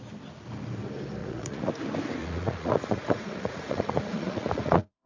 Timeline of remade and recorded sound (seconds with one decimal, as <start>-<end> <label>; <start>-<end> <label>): 0.0-1.2 recorded; 1.2-1.7 remade; 1.7-2.2 recorded; 2.2-5.1 remade